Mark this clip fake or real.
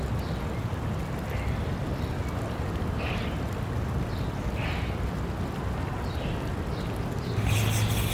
real